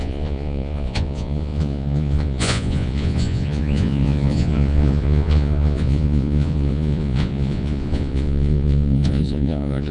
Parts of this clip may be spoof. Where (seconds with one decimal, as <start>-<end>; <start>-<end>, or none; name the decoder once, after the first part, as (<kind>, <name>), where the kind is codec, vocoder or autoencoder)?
0.0-9.9 (vocoder, Vocos)